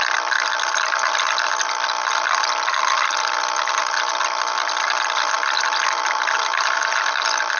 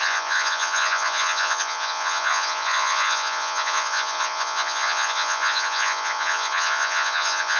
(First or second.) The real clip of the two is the first